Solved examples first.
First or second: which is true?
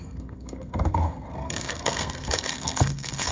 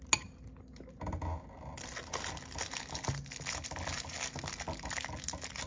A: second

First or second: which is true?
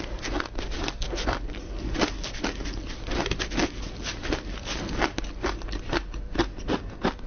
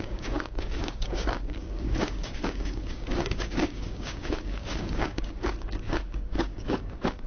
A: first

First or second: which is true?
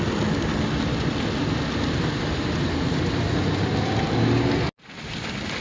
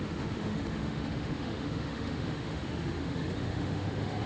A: first